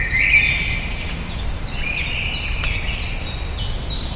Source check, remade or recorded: recorded